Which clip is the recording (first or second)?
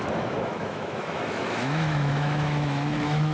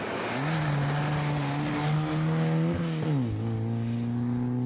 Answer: second